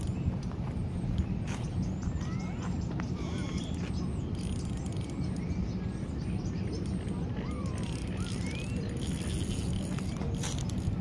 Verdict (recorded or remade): recorded